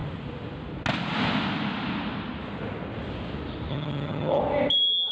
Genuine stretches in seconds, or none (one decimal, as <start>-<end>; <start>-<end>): 0.0-3.7; 4.4-5.1